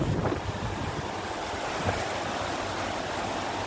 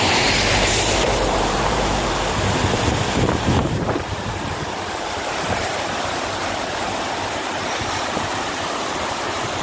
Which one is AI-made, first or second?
second